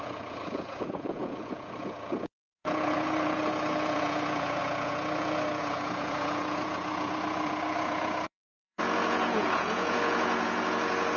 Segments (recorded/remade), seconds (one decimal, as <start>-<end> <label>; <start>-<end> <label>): 0.0-11.2 remade